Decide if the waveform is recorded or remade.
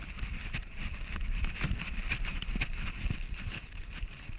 remade